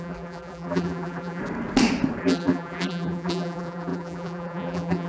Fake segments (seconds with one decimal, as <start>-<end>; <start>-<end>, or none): 0.0-1.4; 2.2-5.1